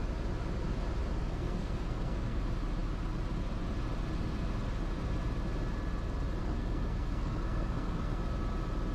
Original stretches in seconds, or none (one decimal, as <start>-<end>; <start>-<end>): 0.0-1.2; 2.4-6.4; 8.2-8.9